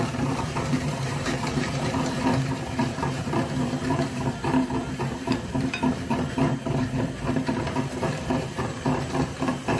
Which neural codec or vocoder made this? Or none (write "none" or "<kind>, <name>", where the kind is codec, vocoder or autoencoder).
vocoder, BigVGAN v2